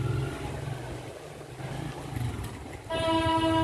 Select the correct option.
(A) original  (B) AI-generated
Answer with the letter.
A